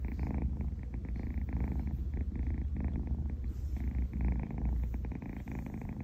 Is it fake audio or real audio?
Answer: real